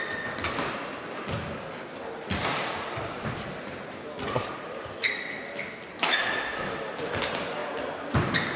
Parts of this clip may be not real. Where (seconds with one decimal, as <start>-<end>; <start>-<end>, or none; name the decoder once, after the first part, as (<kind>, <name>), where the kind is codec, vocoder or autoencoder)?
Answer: none